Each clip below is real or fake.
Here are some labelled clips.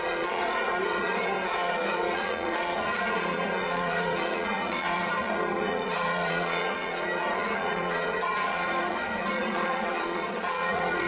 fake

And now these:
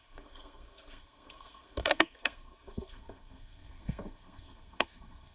fake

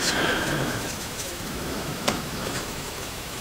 fake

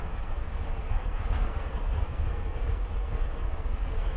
fake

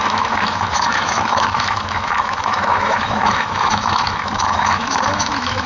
fake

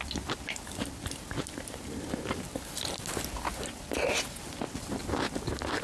real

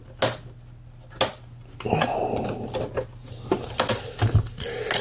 real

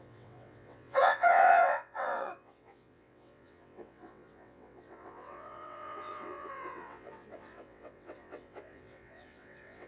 fake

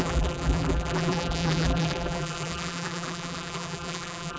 fake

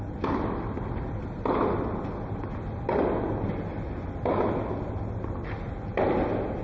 real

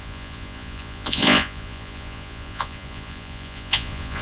fake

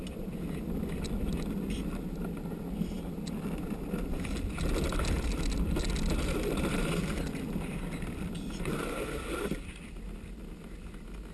real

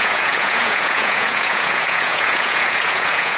fake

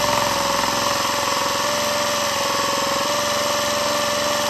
real